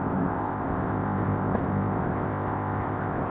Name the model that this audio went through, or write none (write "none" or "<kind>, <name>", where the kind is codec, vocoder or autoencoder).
codec, ZipCodec